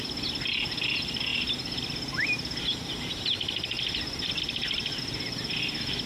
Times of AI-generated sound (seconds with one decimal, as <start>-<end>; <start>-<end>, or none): none